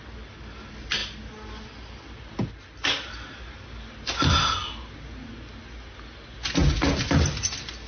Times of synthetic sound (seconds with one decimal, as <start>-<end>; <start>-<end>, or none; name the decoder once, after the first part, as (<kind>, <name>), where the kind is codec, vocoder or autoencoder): none